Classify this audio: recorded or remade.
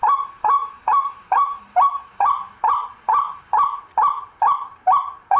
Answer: remade